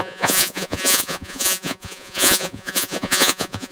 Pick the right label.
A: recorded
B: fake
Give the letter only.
B